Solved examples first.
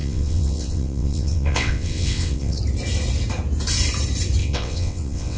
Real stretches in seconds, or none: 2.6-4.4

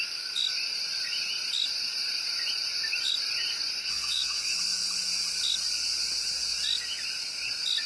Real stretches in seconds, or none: 0.0-3.8; 4.4-7.9

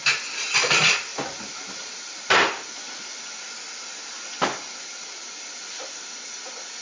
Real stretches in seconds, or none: 0.0-6.8

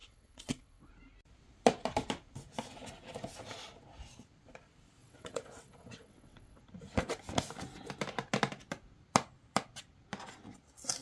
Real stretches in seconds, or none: 0.9-5.0; 6.6-11.0

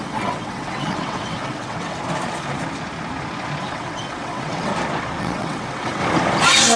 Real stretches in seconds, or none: 2.0-3.6; 4.7-5.2; 6.0-6.8

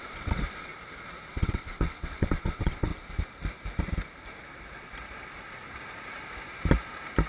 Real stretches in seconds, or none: 0.7-1.3; 2.9-7.3